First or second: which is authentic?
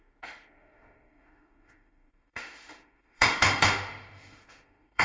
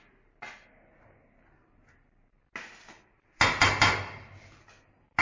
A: second